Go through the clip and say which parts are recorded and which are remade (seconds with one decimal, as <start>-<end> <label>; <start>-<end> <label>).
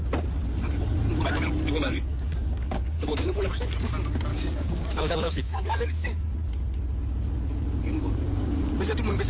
0.0-2.1 recorded; 2.1-3.5 remade; 3.5-4.3 recorded; 4.3-6.2 remade; 6.2-8.0 recorded; 8.0-8.7 remade; 8.7-9.3 recorded